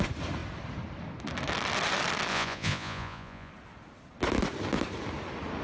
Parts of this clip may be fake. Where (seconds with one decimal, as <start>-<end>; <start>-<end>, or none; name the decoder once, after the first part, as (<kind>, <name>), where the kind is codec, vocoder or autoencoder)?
2.3-3.5 (vocoder, Vocos)